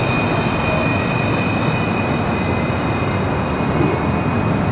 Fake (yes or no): no